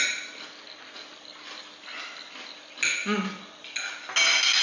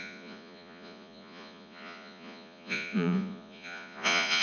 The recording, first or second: first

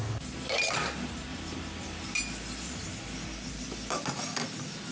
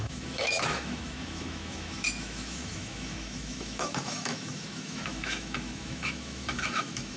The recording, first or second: first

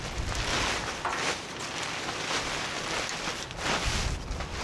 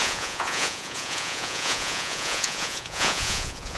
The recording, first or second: first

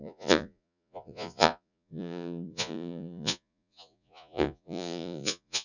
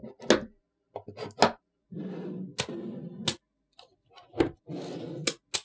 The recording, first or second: second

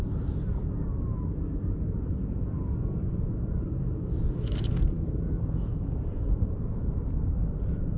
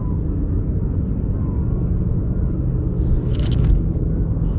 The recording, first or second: second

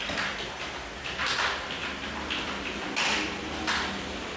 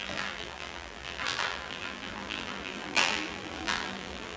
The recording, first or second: first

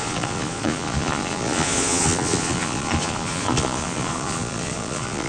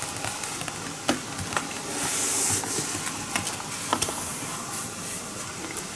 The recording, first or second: second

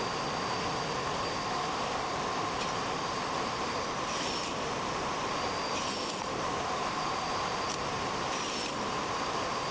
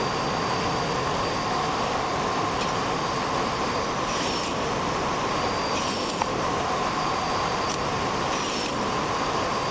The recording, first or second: second